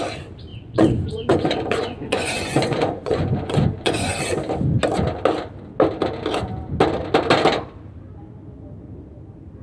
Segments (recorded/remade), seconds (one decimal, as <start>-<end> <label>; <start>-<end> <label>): 0.0-0.5 recorded; 0.5-4.2 remade; 4.2-9.6 recorded